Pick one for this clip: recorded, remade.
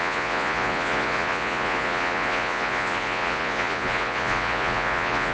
remade